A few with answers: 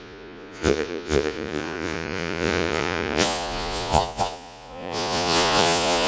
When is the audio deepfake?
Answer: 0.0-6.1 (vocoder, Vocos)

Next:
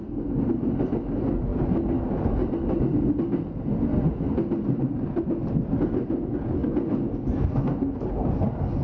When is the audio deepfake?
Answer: none

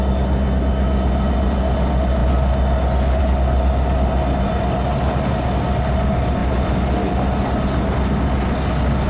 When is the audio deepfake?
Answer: none

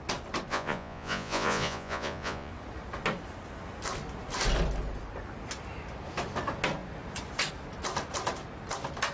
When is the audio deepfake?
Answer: 0.5-2.5 (vocoder, Vocos)

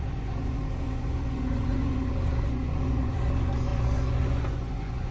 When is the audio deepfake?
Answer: 0.0-5.1 (vocoder, Vocos)